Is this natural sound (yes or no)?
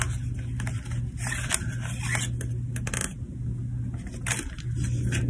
yes